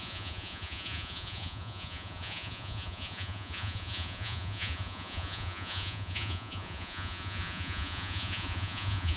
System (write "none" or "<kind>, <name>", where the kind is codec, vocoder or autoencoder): vocoder, Vocos